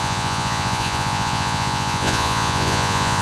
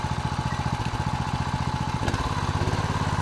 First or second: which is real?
second